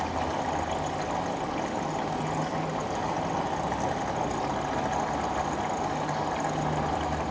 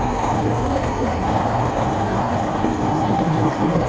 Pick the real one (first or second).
first